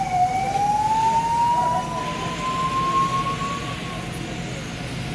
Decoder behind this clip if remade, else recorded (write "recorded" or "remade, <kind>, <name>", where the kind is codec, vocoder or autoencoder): recorded